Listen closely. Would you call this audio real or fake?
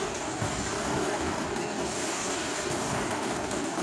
fake